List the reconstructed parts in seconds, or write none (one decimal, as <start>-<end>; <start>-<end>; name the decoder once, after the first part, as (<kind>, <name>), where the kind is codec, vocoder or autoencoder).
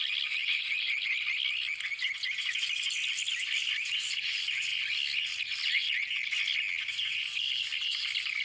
none